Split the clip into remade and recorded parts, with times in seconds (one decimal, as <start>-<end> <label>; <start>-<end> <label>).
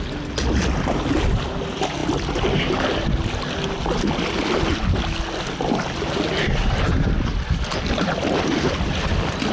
0.0-9.5 recorded